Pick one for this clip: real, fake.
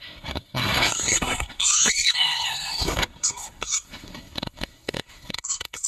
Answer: fake